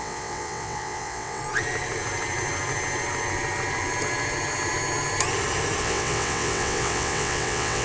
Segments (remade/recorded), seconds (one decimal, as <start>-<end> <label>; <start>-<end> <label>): 0.0-1.4 remade; 1.4-5.8 recorded; 5.8-7.8 remade